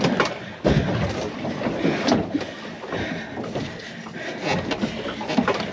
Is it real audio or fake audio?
real